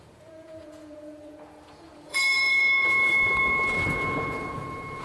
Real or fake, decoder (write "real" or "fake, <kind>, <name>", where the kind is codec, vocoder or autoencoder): fake, vocoder, Vocos